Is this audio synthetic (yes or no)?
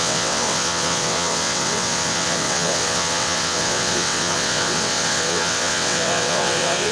yes